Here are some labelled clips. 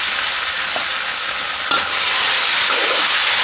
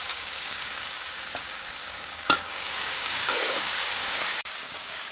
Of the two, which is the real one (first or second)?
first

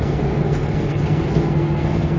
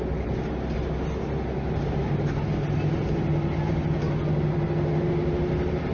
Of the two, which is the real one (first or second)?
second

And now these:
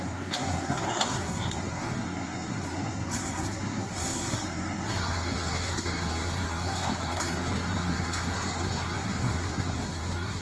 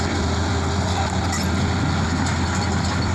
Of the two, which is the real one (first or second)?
second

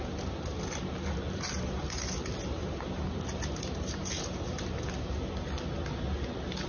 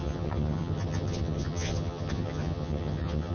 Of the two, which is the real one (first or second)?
first